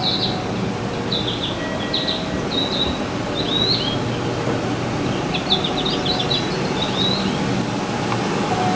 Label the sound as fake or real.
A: real